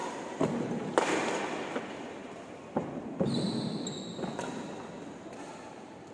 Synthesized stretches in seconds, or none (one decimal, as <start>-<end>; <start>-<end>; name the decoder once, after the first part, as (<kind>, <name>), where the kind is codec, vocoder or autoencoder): none